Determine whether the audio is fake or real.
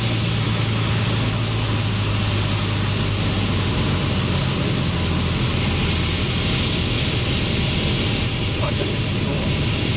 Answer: real